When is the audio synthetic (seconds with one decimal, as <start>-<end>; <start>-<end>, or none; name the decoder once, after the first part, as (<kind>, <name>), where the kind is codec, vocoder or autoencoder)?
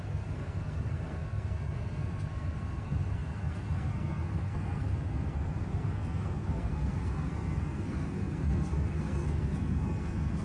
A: 0.0-10.4 (codec, SNAC)